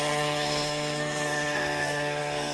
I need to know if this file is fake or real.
fake